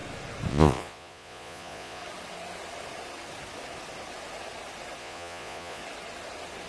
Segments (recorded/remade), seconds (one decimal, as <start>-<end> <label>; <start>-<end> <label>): 0.0-0.5 recorded; 0.5-2.0 remade; 2.0-5.0 recorded; 5.0-5.8 remade; 5.8-6.7 recorded